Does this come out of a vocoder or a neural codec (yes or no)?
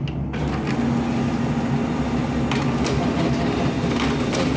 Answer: no